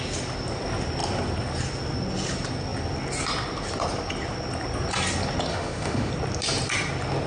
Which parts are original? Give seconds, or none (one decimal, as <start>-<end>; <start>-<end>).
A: 0.0-5.5; 6.1-7.3